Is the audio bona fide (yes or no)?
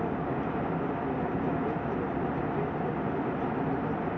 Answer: yes